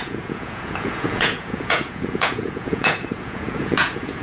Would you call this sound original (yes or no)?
no